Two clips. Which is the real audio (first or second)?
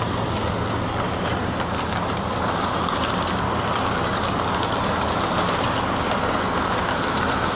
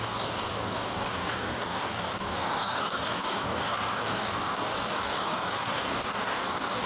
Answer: first